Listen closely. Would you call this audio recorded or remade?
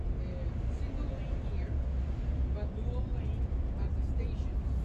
recorded